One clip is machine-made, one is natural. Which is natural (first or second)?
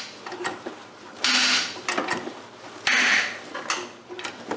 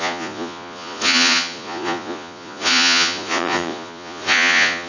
first